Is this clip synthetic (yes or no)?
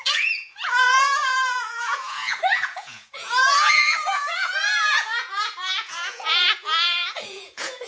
yes